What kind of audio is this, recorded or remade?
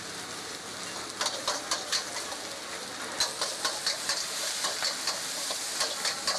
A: recorded